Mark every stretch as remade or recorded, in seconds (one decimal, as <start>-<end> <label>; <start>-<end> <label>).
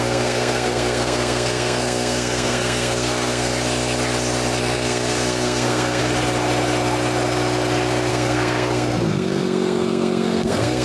0.0-3.5 remade; 3.5-4.6 recorded; 4.6-6.0 remade; 6.0-8.1 recorded; 8.1-10.8 remade